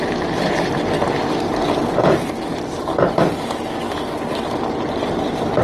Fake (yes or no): yes